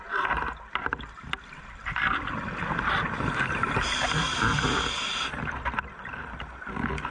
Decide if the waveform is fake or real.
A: real